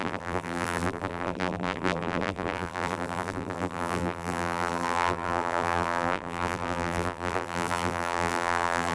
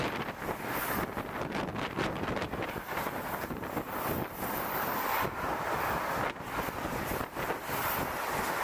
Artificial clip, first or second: first